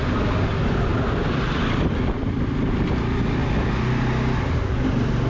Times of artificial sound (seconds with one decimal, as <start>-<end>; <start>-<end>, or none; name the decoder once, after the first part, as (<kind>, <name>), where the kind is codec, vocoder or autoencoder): none

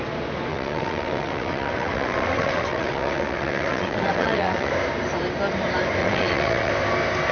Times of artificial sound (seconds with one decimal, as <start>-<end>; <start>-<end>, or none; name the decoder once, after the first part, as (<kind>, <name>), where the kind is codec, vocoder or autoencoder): 0.5-4.7 (vocoder, WaveNeXt); 6.0-6.7